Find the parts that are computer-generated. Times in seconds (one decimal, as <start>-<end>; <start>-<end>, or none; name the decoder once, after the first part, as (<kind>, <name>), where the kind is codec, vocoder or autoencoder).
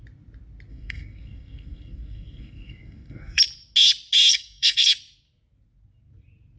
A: 0.7-3.4 (codec, SNAC); 4.3-4.9